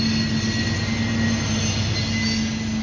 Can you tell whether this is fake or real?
real